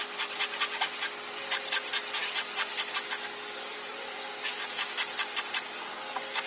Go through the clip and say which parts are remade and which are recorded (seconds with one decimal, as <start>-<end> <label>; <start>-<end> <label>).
0.0-6.5 recorded